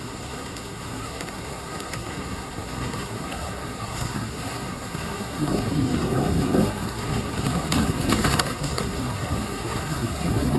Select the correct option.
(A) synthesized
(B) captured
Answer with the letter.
A